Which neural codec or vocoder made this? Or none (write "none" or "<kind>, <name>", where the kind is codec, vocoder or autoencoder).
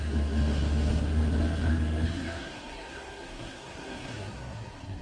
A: codec, SNAC